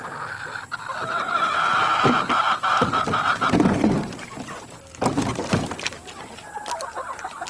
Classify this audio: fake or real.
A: real